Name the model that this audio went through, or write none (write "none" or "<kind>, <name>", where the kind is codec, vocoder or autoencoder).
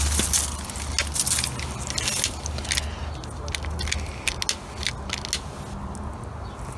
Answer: none